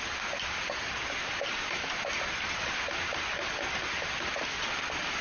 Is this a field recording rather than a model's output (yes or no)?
yes